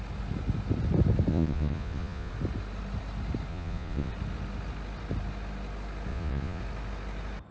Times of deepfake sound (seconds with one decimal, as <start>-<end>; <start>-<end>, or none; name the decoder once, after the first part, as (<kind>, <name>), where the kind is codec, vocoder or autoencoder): 1.3-2.3 (vocoder, Vocos); 3.5-4.1; 6.1-6.6